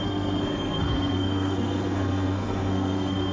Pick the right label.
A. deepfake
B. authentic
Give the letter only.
A